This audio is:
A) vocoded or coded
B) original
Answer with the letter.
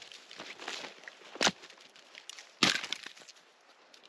B